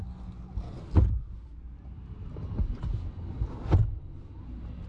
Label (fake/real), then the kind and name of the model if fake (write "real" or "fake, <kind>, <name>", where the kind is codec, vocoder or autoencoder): real